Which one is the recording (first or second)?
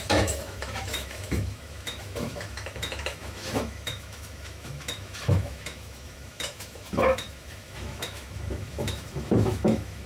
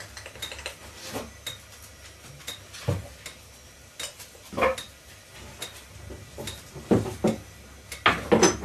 second